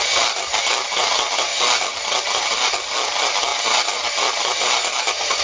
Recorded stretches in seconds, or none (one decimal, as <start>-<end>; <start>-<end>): 0.0-5.4

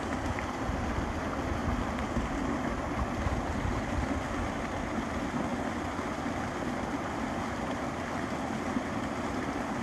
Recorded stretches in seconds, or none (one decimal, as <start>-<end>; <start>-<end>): 0.0-9.8

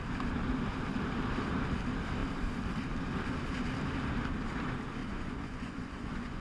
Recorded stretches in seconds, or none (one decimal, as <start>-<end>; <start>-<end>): 0.0-5.0

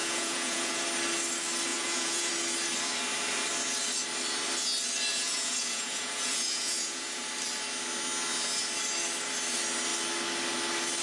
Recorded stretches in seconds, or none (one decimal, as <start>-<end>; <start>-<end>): 0.8-1.7; 2.3-5.1; 7.3-11.0

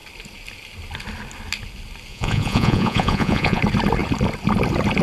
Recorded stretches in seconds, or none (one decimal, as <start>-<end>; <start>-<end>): 0.0-2.1; 3.6-5.0

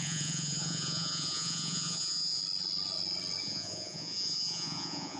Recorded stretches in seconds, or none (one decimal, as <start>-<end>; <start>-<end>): 2.4-3.4